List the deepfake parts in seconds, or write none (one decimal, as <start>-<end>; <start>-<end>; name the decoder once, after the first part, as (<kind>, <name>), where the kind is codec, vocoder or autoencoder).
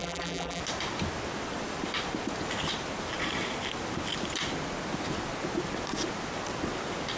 0.0-0.6 (vocoder, BigVGAN v2)